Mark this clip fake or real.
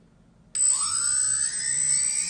real